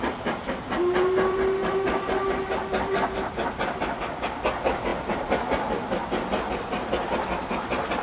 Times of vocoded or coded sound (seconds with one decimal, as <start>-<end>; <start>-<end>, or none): 0.0-0.6